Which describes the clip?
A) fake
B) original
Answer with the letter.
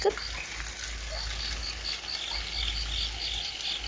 B